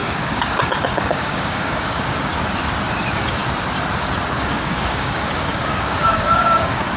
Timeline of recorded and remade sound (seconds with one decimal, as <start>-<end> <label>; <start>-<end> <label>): 0.0-2.3 remade; 2.3-3.0 recorded; 3.0-3.4 remade; 3.4-4.3 recorded; 4.3-7.0 remade